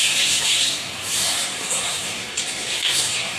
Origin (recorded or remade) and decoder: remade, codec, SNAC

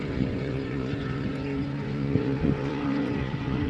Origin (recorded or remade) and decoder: remade, vocoder, Vocos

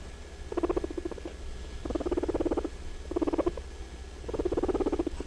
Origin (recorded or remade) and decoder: recorded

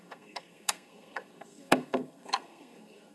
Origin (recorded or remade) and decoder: remade, codec, SNAC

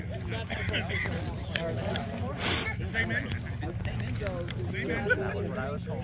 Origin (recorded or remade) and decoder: recorded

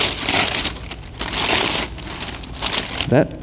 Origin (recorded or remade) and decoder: recorded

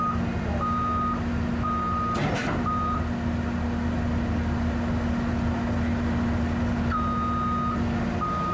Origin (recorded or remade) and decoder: recorded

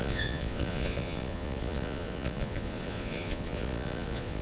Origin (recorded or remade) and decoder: remade, vocoder, Vocos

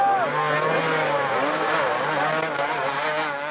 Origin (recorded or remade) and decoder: recorded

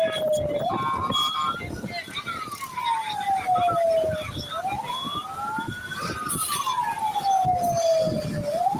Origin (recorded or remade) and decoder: recorded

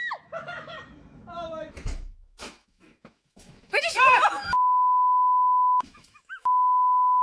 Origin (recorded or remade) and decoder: remade, autoencoder, DAC-VAE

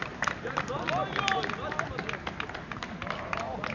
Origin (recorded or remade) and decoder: recorded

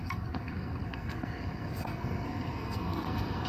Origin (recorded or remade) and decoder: remade, codec, SNAC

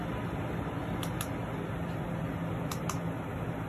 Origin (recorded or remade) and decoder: recorded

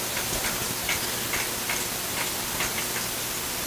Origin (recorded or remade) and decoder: recorded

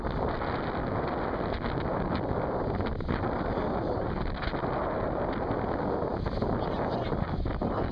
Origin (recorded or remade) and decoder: recorded